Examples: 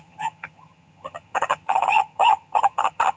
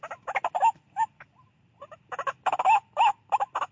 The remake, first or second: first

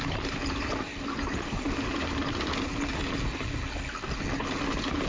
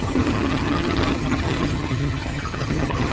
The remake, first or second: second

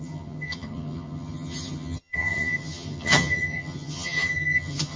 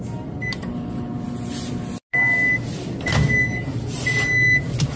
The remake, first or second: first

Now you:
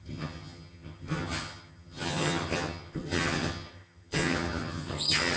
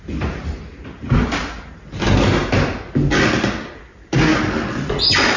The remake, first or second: first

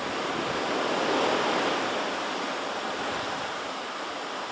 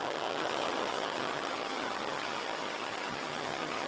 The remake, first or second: second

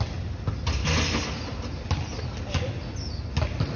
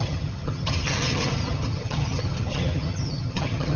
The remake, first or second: second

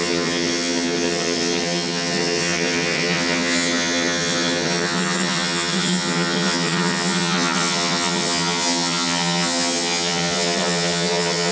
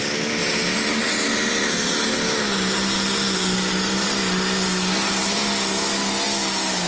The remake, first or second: first